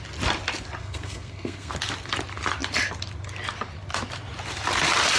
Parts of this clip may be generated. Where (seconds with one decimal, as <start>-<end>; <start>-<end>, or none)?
0.8-1.7